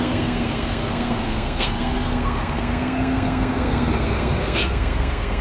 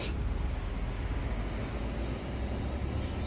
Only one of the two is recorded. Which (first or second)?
second